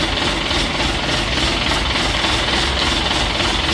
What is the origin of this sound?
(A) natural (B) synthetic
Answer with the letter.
A